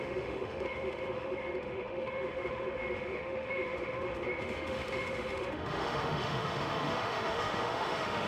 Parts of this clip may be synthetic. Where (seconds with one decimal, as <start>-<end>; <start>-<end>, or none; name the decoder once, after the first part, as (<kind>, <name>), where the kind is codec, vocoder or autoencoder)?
0.0-8.3 (autoencoder, DAC-VAE)